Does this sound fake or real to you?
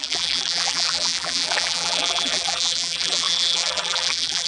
fake